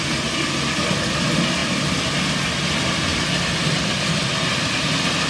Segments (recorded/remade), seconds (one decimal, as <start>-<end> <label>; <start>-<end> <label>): 0.0-5.3 recorded